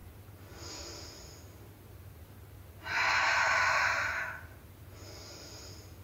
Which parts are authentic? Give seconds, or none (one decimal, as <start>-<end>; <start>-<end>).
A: 0.0-6.0